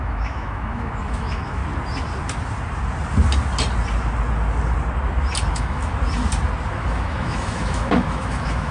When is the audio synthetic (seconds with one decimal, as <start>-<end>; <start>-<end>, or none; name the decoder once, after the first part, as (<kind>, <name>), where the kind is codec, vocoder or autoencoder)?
0.0-1.6 (autoencoder, DAC-VAE); 5.5-5.9; 6.8-8.7